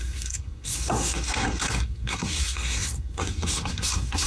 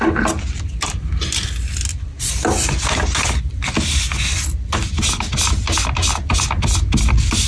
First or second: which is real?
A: second